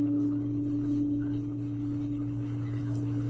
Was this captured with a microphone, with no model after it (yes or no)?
no